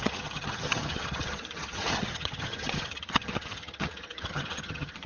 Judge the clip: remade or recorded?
remade